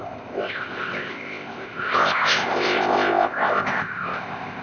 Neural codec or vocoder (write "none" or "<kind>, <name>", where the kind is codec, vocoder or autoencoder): codec, ZipCodec